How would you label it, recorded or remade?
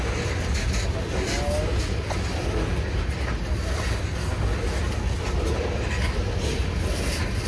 recorded